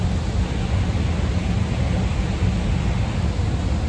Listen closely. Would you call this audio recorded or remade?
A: recorded